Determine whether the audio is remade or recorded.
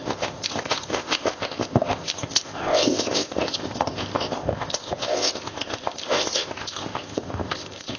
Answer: remade